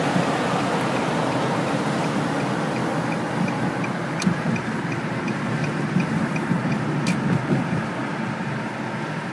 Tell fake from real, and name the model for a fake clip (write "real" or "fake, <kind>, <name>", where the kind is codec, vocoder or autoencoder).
real